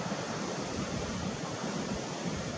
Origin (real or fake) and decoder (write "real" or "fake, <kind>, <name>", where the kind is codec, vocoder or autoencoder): real